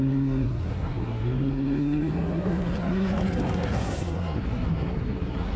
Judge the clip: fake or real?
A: fake